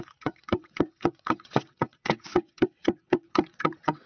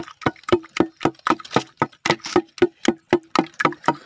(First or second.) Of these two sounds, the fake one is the first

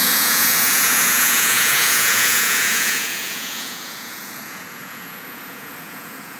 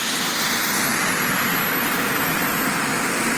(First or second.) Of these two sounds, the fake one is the first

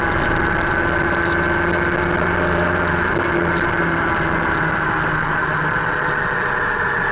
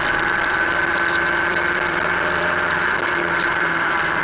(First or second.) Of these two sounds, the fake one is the second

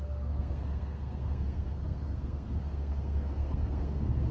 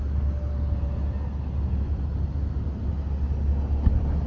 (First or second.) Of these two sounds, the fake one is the first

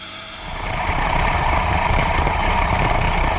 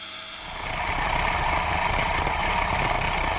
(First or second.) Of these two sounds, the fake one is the first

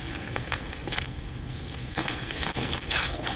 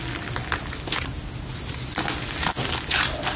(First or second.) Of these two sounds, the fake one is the first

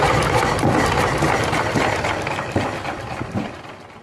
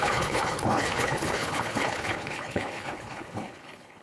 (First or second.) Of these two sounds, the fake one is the second